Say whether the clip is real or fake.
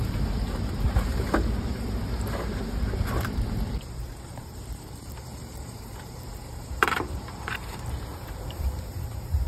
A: fake